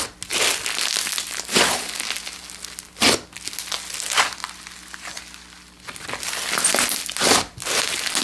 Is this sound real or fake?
real